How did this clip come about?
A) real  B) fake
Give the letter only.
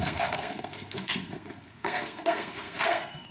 B